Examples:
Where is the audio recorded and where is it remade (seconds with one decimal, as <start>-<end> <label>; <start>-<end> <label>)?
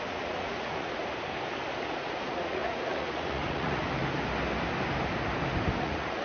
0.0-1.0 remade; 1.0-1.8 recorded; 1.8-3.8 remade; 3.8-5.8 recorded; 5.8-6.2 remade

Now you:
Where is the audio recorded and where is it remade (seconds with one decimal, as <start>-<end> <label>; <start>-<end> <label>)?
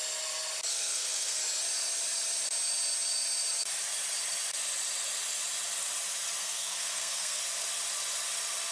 0.0-0.7 recorded; 0.7-1.4 remade; 1.4-6.4 recorded; 6.4-7.4 remade; 7.4-8.7 recorded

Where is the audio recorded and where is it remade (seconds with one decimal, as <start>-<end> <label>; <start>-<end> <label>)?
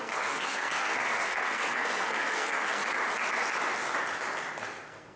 0.0-2.8 remade; 2.8-4.6 recorded; 4.6-5.2 remade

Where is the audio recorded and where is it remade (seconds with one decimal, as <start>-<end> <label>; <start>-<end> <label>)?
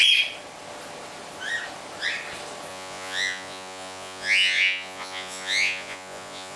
0.0-2.7 recorded; 2.7-6.6 remade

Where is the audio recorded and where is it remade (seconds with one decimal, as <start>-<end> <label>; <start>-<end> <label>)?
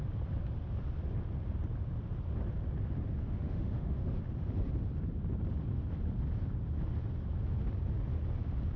0.0-3.2 recorded; 3.2-4.2 remade; 4.2-8.8 recorded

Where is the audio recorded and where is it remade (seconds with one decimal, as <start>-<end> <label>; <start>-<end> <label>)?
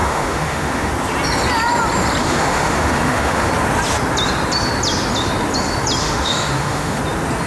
0.0-0.9 remade; 0.9-2.2 recorded; 2.2-3.5 remade; 3.5-6.0 recorded; 6.0-7.0 remade; 7.0-7.5 recorded